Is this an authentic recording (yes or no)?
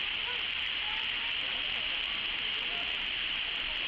yes